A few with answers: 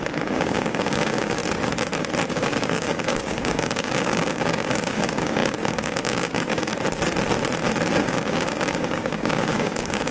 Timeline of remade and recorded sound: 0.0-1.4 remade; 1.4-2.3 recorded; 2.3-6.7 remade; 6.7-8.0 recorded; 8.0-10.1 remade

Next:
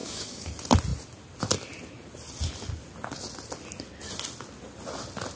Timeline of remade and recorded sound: 0.0-0.5 remade; 0.5-5.4 recorded

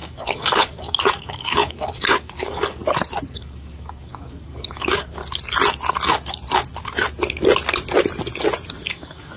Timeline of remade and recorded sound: 0.0-2.8 remade; 2.8-3.3 recorded; 3.3-5.2 remade; 5.2-8.9 recorded; 8.9-9.4 remade

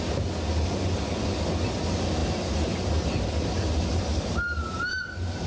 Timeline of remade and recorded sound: 0.0-5.5 recorded

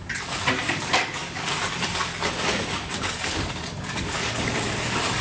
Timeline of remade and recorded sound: 0.0-5.2 remade

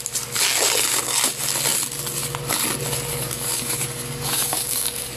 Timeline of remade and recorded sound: 0.0-3.1 recorded; 3.1-5.2 remade

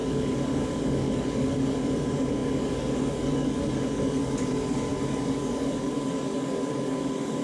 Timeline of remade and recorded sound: 0.0-7.4 remade